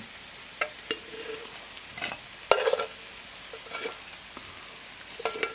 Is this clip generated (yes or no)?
no